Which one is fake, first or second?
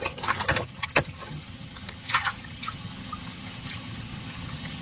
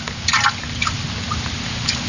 first